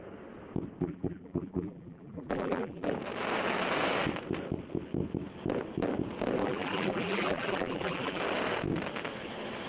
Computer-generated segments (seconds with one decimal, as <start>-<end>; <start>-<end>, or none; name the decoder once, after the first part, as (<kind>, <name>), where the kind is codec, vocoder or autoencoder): 0.8-2.9 (vocoder, BigVGAN v2); 6.4-8.2